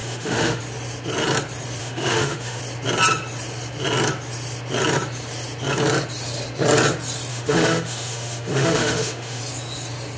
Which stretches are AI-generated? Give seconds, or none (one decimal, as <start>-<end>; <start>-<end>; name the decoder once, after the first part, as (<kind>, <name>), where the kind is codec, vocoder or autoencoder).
0.0-0.6 (autoencoder, DAC-VAE); 1.8-2.6; 7.3-9.4